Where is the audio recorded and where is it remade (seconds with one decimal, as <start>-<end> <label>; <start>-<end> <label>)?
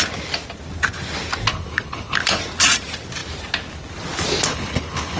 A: 0.0-1.5 recorded; 1.5-2.4 remade; 2.4-4.4 recorded; 4.4-5.2 remade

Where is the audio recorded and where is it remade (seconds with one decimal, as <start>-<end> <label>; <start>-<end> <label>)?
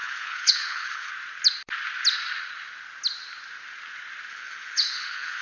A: 0.0-1.1 remade; 1.1-4.3 recorded; 4.3-5.4 remade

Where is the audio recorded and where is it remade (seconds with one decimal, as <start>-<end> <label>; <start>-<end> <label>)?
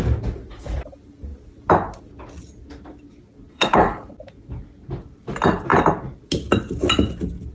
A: 0.0-3.5 recorded; 3.5-4.1 remade; 4.1-7.5 recorded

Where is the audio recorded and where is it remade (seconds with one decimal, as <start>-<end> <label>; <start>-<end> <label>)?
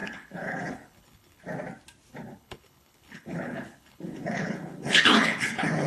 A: 0.0-1.4 remade; 1.4-2.1 recorded; 2.1-5.9 remade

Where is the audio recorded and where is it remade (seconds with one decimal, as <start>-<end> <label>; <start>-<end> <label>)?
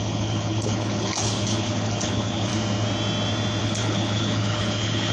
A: 0.0-2.5 remade; 2.5-3.6 recorded; 3.6-5.1 remade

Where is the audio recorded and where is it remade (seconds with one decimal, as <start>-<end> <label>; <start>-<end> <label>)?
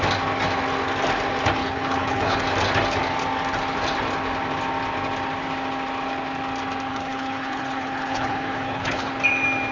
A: 0.0-1.6 recorded; 1.6-2.4 remade; 2.4-6.9 recorded; 6.9-9.1 remade; 9.1-9.7 recorded